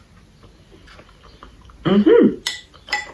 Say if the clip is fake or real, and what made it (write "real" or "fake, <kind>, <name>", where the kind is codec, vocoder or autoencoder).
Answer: real